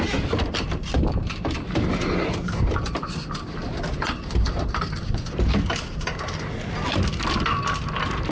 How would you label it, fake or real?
real